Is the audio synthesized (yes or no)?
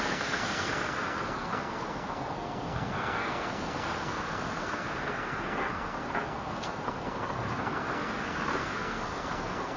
yes